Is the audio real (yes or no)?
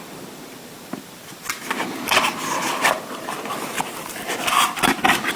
no